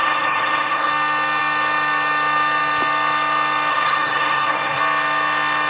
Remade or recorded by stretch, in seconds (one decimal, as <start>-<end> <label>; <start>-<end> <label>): 0.0-0.9 remade; 0.9-3.7 recorded; 3.7-4.8 remade; 4.8-5.7 recorded